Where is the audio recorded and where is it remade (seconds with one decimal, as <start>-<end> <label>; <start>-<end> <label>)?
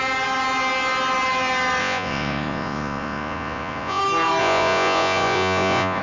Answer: 0.0-1.8 recorded; 1.8-4.0 remade; 4.0-4.4 recorded; 4.4-6.0 remade